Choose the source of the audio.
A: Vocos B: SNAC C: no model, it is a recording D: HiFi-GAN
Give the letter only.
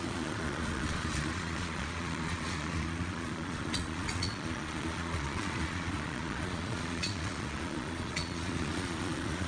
A